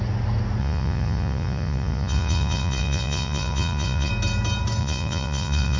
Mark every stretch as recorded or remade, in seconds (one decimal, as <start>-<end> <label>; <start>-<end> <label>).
0.0-0.6 recorded; 0.6-4.1 remade; 4.1-4.8 recorded; 4.8-5.8 remade